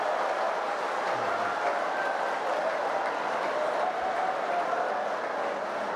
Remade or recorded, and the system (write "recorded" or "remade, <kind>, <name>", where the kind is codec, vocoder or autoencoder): recorded